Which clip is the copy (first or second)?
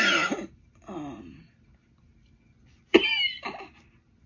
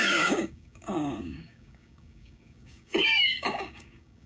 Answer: second